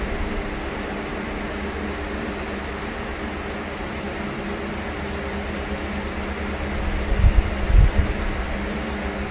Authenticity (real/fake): real